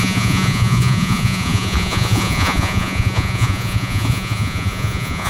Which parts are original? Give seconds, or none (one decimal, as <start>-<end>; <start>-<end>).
none